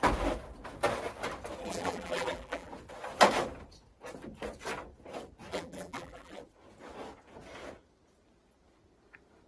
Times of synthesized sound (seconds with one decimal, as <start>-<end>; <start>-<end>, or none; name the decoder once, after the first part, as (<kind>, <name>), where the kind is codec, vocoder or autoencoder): 1.6-2.7 (vocoder, BigVGAN v2); 5.5-6.4